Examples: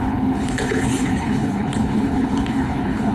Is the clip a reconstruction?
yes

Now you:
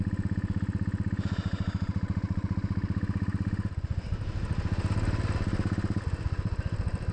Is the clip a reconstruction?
no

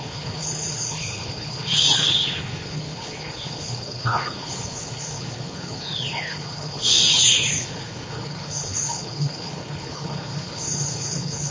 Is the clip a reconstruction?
yes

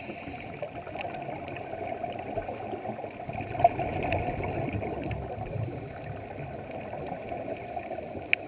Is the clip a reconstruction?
no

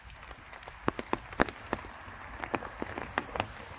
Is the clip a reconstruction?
no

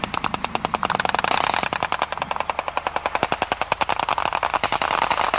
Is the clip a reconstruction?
no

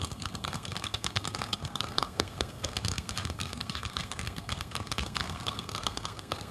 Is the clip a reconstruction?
yes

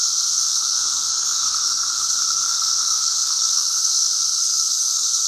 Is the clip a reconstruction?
yes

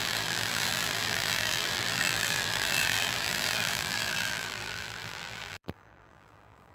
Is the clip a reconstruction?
yes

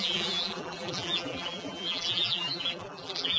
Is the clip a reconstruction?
yes